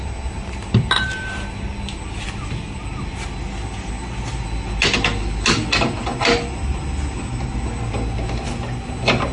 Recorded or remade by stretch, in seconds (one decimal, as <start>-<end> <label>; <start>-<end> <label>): 0.0-9.3 recorded